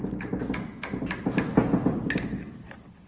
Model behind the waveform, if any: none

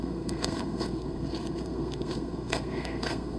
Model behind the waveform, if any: codec, SNAC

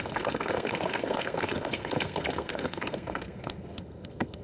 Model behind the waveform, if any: codec, SNAC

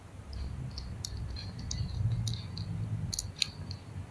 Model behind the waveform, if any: none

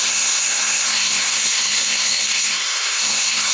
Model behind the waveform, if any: codec, SNAC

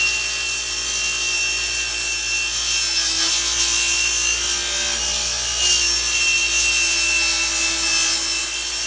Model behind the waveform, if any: none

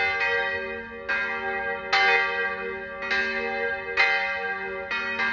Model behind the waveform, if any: none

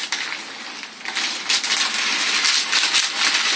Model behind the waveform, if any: none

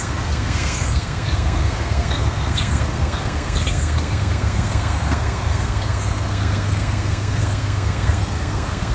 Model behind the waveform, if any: codec, SNAC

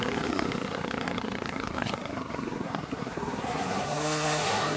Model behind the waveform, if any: codec, SNAC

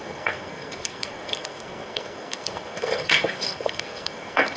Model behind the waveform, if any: codec, SNAC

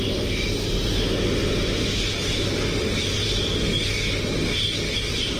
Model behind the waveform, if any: none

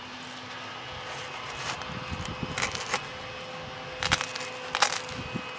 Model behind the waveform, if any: none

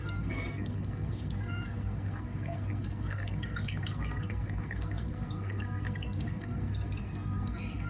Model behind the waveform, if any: codec, SNAC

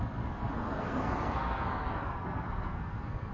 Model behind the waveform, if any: codec, SNAC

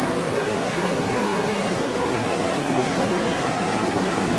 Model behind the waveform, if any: codec, SNAC